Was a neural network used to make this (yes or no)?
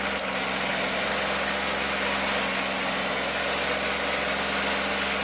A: no